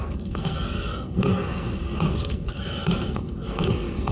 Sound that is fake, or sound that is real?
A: fake